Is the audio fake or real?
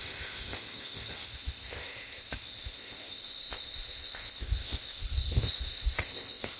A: fake